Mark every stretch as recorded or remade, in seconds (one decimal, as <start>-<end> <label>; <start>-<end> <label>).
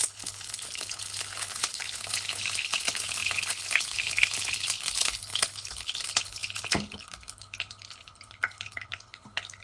0.0-9.6 remade